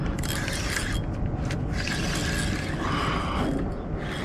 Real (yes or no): yes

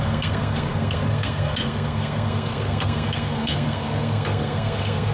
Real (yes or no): no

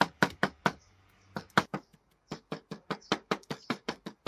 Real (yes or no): no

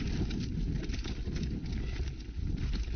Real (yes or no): yes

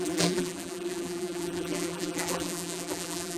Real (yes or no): no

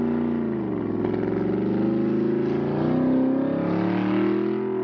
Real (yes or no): yes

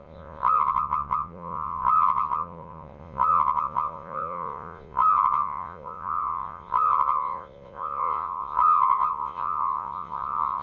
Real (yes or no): no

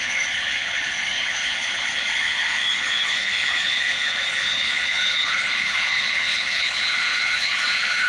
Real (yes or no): no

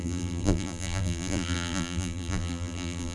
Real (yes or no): no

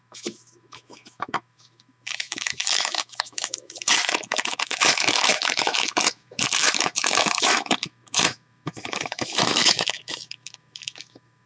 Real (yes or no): no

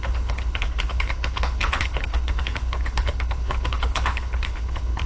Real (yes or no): no